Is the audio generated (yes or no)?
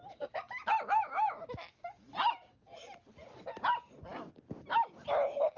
no